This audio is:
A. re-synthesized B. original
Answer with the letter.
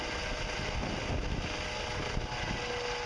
B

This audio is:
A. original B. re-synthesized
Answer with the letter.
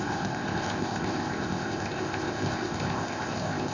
B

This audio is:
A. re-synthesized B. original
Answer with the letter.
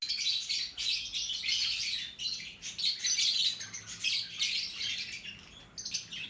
B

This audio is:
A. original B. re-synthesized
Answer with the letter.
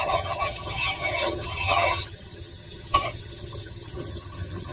B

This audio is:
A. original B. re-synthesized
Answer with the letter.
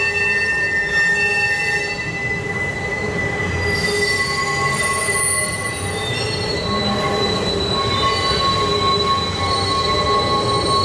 A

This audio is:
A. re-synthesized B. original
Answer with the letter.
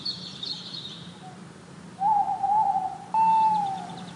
A